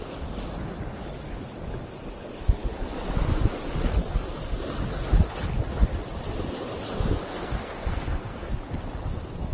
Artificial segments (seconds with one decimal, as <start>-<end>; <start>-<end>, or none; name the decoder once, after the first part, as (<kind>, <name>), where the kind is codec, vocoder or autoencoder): 7.3-8.5 (codec, SNAC)